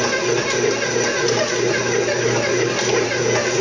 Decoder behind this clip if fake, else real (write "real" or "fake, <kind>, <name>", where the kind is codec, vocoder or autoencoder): real